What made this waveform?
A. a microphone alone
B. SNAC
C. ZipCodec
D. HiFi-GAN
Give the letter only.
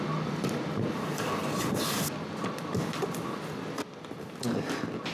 A